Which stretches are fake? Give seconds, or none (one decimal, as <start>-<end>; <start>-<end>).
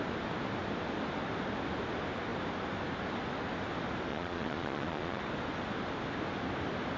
4.1-5.2